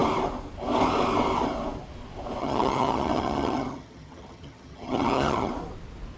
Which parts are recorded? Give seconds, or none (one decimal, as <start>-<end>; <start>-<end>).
0.0-2.4; 5.5-6.2